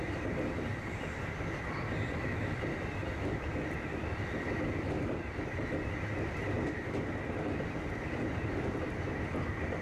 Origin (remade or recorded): recorded